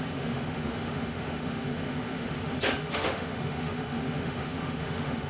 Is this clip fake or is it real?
fake